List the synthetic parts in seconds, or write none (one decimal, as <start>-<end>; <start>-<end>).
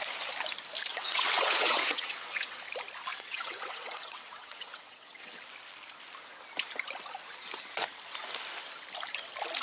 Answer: 0.9-2.6; 3.1-5.4